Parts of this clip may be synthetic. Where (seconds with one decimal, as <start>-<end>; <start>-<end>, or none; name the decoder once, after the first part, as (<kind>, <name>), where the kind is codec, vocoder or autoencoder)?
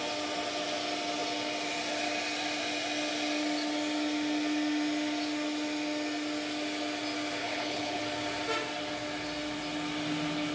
7.4-8.0 (codec, HILCodec)